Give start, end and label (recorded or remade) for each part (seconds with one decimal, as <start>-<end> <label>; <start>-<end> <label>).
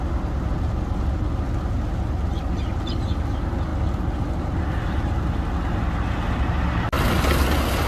0.0-7.9 recorded